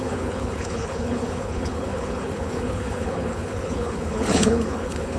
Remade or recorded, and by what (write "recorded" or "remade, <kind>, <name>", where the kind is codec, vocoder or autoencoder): remade, codec, HILCodec